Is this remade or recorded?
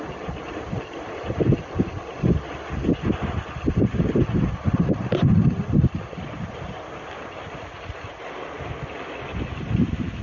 recorded